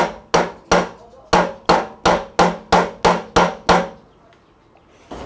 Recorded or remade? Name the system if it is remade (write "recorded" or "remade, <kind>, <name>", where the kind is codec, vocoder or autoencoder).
recorded